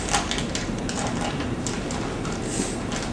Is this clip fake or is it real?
real